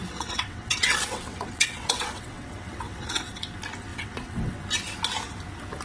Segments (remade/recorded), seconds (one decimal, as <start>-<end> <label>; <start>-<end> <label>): 0.0-3.5 remade; 3.5-3.9 recorded; 3.9-4.6 remade; 4.6-5.8 recorded